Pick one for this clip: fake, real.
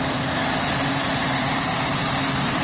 real